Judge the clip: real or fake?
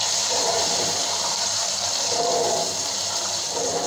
fake